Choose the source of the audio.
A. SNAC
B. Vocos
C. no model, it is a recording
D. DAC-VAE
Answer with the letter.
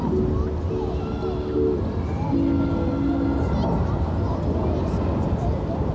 C